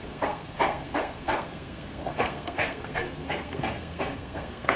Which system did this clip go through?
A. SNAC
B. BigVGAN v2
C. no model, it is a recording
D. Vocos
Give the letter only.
A